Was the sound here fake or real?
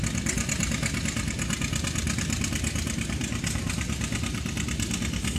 fake